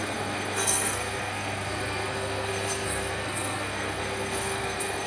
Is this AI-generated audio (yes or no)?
yes